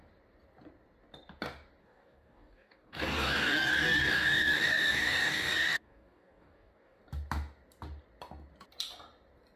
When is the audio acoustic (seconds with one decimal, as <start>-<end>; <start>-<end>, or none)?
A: 0.0-1.8; 7.0-9.6